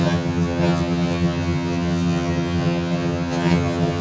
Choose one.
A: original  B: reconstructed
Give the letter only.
B